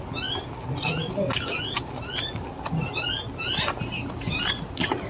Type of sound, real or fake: real